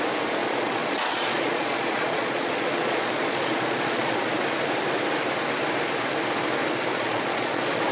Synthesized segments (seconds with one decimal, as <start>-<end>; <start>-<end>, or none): 0.4-4.3; 6.9-7.9